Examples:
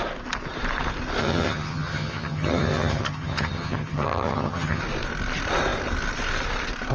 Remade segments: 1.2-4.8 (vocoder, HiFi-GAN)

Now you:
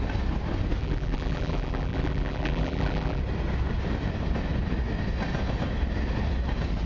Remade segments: 0.8-3.2 (vocoder, BigVGAN v2)

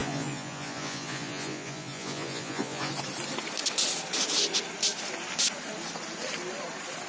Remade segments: 0.0-2.9 (vocoder, Vocos)

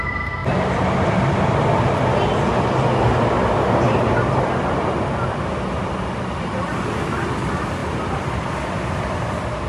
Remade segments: none

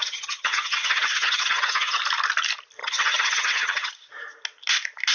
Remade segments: 0.0-2.0 (vocoder, HiFi-GAN); 2.8-3.9

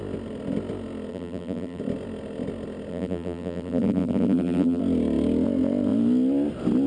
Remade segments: 1.1-1.8 (vocoder, BigVGAN v2); 2.9-4.8

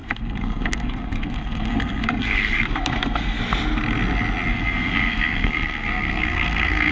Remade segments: 0.0-3.4 (codec, SNAC); 4.5-6.9